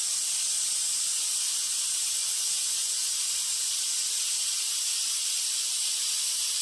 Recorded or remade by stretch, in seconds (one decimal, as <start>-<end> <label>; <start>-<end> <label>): 0.0-2.2 recorded; 2.2-3.2 remade; 3.2-6.6 recorded